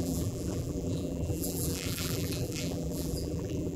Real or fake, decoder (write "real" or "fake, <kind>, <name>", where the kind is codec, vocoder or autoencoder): fake, vocoder, BigVGAN v2